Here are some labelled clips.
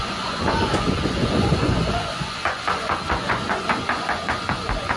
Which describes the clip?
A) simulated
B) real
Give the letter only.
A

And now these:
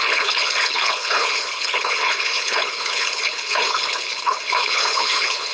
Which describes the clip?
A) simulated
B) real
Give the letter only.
A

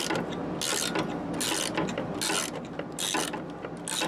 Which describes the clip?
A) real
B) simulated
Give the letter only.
A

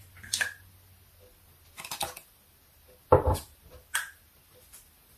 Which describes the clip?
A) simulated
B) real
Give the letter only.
B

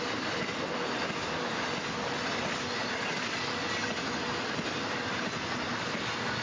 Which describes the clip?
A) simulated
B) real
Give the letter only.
B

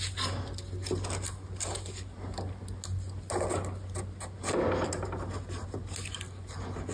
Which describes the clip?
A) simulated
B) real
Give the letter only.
B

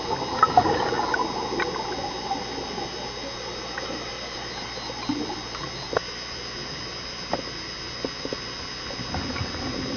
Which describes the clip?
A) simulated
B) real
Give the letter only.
B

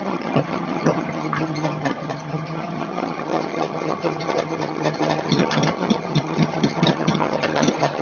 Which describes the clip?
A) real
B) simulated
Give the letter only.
B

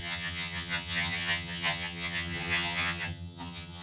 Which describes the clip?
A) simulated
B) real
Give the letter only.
A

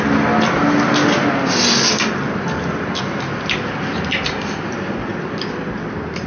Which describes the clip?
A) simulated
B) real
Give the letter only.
B